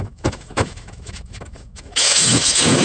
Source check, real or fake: fake